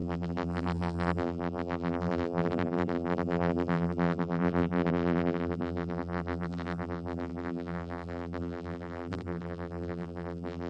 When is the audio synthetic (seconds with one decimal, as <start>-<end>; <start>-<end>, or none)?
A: 0.0-10.7